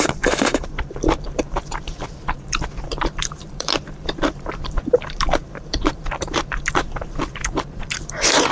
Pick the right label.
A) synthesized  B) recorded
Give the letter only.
A